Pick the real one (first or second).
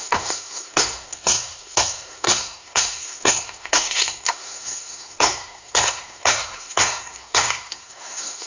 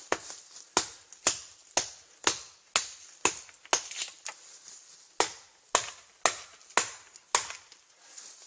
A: second